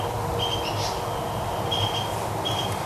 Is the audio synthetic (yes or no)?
no